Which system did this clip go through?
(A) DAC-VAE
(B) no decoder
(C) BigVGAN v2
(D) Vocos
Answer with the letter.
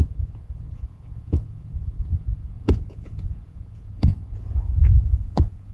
D